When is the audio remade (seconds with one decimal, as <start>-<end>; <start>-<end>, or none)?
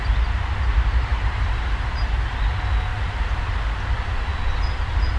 1.1-1.9; 2.9-3.6